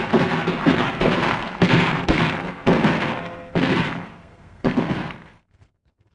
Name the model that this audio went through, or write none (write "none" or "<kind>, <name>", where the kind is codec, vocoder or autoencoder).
codec, SNAC